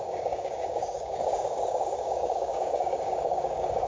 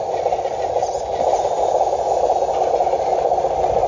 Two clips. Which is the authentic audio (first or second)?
second